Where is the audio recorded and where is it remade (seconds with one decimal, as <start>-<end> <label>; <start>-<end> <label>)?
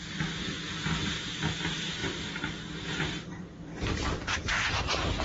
0.0-5.2 recorded